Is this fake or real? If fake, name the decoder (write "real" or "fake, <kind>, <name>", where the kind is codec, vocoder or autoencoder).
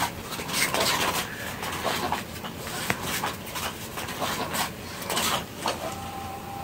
real